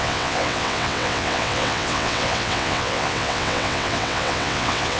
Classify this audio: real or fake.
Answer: fake